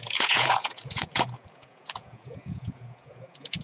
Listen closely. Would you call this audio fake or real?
fake